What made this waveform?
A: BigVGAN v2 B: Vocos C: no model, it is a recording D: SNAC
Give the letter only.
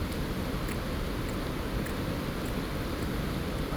C